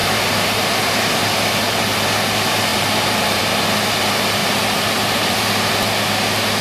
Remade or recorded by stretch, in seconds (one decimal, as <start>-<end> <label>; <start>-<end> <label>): 0.0-1.4 remade; 1.4-2.7 recorded; 2.7-3.4 remade; 3.4-4.4 recorded; 4.4-5.5 remade; 5.5-6.6 recorded